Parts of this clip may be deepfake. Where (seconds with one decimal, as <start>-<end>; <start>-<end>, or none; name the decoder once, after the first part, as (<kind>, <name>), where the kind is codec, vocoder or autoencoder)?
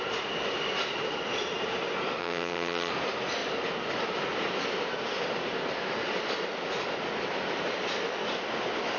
2.2-2.9 (vocoder, HiFi-GAN)